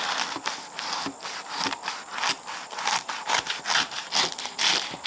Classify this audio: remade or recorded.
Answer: recorded